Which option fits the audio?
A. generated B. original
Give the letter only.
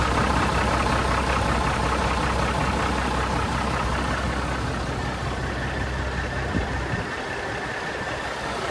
B